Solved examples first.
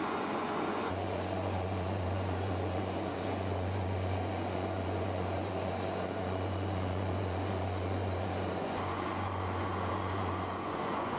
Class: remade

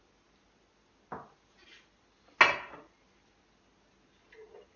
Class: recorded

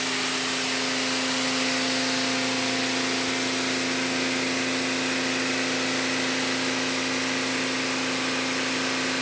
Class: recorded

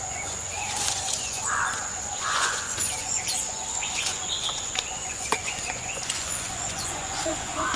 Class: remade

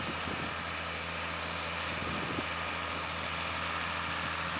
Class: recorded